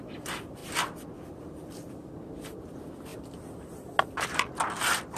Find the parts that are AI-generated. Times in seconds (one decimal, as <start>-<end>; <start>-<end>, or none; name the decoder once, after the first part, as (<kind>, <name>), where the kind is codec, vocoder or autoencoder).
none